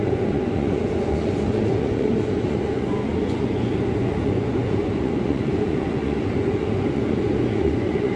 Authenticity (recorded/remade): remade